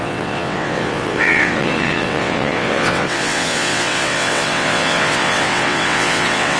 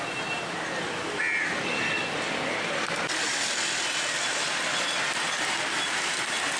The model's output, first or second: first